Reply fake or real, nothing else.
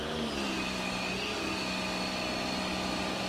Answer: real